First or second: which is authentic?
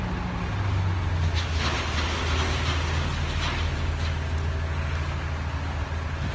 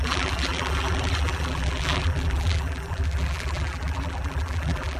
first